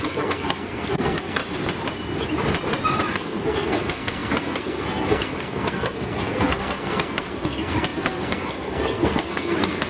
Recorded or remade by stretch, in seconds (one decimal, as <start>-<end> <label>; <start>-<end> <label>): 0.0-1.4 remade; 1.4-3.1 recorded; 3.1-9.9 remade